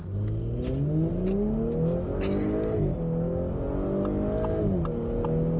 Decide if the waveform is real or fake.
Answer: real